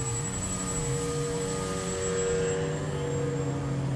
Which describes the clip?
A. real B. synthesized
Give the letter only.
A